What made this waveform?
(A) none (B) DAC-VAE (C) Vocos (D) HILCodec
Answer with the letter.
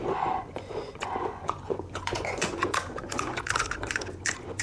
C